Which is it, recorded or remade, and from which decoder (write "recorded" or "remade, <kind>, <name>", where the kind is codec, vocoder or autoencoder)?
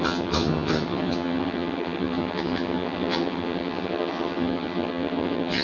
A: remade, vocoder, HiFi-GAN